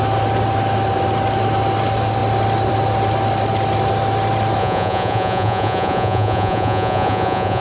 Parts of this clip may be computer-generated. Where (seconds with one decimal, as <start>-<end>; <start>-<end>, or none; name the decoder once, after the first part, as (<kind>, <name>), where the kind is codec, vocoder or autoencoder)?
4.6-7.6 (vocoder, Vocos)